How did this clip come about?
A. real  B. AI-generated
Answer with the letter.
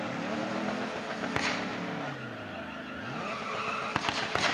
A